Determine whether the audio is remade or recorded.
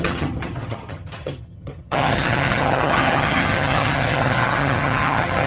remade